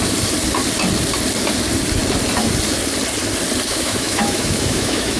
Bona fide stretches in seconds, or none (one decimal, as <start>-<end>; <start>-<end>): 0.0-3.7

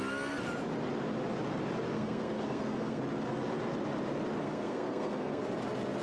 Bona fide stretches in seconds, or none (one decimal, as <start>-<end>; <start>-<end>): 0.0-1.9; 3.0-4.4; 5.4-6.0

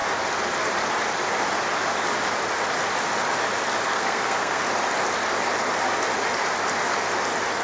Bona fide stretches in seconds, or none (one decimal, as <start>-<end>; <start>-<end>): 0.0-3.9; 4.6-7.6

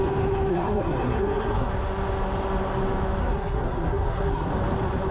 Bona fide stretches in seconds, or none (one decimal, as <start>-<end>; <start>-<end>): 0.0-0.5; 1.7-3.2; 4.5-5.1

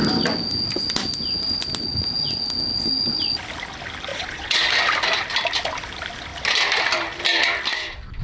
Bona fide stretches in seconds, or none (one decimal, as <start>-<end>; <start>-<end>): 0.0-4.1; 4.7-8.2

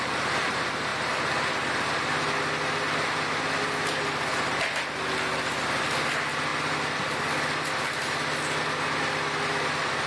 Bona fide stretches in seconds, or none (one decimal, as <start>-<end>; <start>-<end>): 0.0-10.1